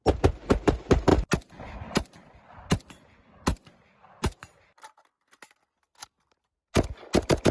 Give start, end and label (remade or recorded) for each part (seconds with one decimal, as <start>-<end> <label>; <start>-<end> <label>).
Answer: 0.0-3.5 recorded; 3.5-5.1 remade; 5.1-7.5 recorded